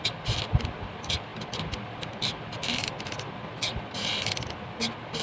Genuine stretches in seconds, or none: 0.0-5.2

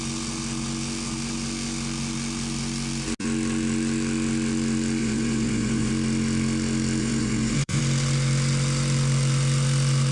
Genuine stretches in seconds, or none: 0.0-5.0; 5.9-7.0; 7.8-10.1

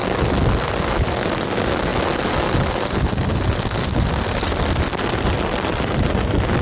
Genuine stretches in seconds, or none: 0.0-6.6

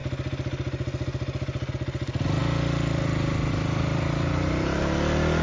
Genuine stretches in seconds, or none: 0.0-5.4